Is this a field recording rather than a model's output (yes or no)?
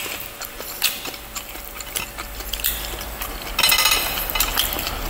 yes